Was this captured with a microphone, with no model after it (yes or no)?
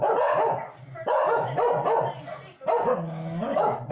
yes